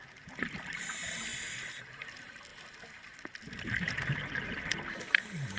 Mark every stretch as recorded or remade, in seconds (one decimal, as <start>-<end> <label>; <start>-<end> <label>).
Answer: 0.0-5.6 recorded